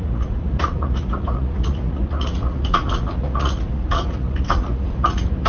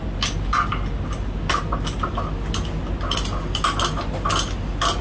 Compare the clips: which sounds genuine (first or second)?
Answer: second